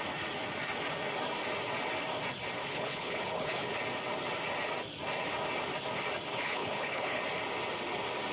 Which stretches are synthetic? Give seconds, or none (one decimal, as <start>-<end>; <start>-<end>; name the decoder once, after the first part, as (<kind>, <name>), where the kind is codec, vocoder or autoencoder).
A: 2.6-3.7 (codec, HILCodec); 6.3-7.2